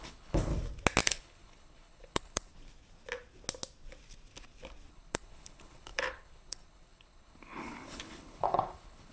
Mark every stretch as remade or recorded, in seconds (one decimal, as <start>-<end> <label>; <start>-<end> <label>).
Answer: 0.0-0.5 remade; 0.5-1.0 recorded; 1.0-2.5 remade; 2.5-4.9 recorded; 4.9-9.1 remade